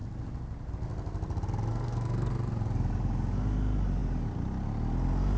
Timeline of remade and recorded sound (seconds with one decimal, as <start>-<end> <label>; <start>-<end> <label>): 0.0-1.7 recorded; 1.7-2.3 remade; 2.3-5.4 recorded